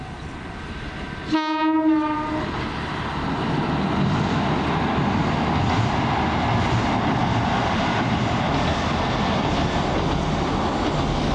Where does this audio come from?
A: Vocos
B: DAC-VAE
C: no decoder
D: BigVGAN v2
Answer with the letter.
C